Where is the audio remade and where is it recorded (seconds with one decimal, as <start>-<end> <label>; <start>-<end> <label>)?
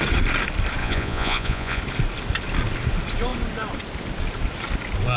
0.0-0.8 recorded; 0.8-1.8 remade; 1.8-5.2 recorded